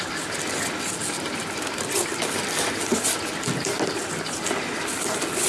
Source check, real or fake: real